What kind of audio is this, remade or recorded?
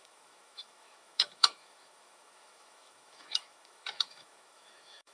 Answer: remade